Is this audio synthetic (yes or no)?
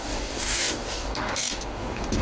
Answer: yes